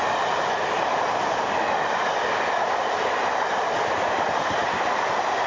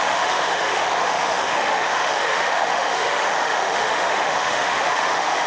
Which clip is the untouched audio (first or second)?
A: first